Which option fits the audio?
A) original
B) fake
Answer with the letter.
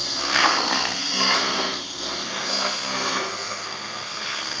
B